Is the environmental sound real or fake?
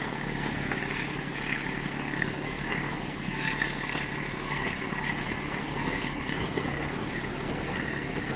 fake